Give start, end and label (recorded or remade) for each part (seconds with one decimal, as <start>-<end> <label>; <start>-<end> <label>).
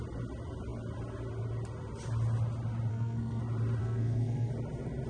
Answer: 0.0-2.9 recorded; 2.9-3.4 remade; 3.4-3.8 recorded; 3.8-4.5 remade; 4.5-5.1 recorded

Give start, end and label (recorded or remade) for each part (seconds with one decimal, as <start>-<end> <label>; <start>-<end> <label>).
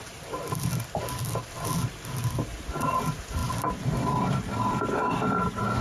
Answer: 0.0-5.8 recorded